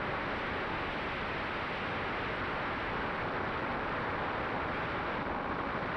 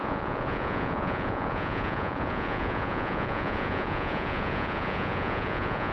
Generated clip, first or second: second